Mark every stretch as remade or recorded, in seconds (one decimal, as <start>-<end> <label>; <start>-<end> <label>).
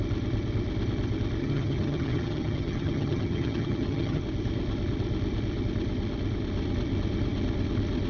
0.0-1.4 recorded; 1.4-4.2 remade; 4.2-8.1 recorded